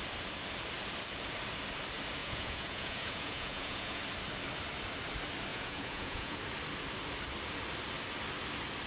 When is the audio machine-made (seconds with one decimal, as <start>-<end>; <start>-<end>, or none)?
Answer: 2.2-4.0; 5.5-6.4